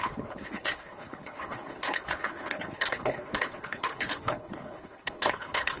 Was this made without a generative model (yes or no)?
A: no